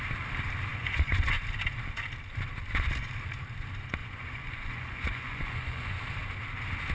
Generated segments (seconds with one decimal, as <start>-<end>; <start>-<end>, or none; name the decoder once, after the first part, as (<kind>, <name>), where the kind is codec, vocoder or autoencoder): 0.7-1.4 (vocoder, Vocos); 4.0-6.0

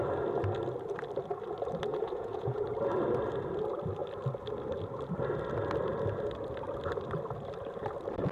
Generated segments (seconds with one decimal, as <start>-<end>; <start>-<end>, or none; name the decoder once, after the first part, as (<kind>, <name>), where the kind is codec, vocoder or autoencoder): 1.9-2.6 (vocoder, Vocos)

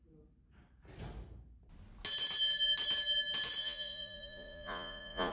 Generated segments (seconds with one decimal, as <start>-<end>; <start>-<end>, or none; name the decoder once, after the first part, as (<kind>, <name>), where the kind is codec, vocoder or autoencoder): 3.6-5.3 (vocoder, Vocos)

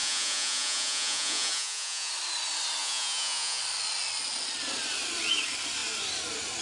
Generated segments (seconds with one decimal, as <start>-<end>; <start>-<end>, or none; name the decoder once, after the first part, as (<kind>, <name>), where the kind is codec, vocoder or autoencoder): 0.0-2.1 (vocoder, Vocos); 2.8-3.6

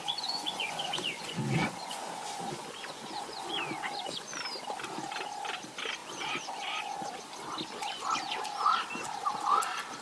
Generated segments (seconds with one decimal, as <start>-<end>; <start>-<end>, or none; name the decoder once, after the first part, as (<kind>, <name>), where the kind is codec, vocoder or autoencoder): 0.0-4.4 (vocoder, Vocos); 6.0-7.1

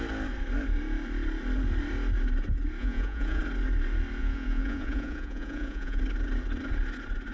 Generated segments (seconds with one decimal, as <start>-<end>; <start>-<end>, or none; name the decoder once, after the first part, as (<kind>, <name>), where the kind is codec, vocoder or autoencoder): 2.8-3.4 (vocoder, Vocos); 4.2-6.0

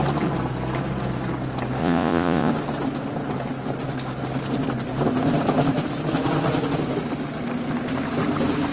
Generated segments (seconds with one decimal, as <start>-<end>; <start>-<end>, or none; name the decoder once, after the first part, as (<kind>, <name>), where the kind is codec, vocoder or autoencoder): 1.8-2.5 (vocoder, Vocos)

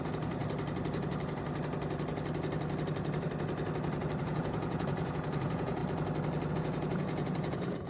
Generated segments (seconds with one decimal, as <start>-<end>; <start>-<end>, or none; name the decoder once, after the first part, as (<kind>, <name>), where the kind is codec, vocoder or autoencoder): 0.0-0.4 (vocoder, Vocos); 4.2-5.8; 6.5-7.9